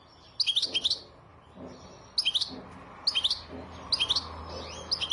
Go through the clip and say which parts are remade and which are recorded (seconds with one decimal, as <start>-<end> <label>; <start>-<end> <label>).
0.0-5.1 recorded